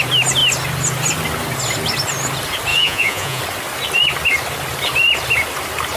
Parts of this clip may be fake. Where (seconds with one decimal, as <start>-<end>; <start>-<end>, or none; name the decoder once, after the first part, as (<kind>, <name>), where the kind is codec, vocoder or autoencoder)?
2.7-3.4 (vocoder, Vocos)